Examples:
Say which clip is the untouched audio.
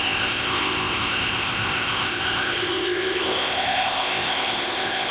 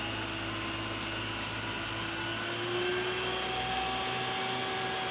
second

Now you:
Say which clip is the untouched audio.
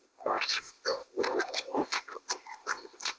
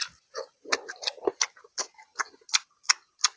second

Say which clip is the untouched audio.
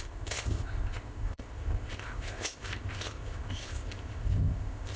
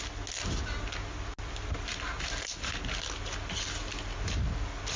second